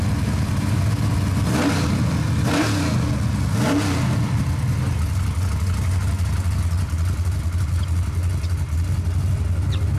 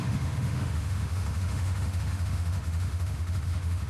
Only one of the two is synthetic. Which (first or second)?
second